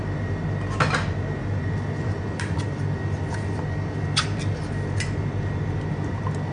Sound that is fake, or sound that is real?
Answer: real